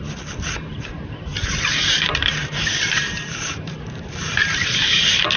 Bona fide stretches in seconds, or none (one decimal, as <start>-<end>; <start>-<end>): none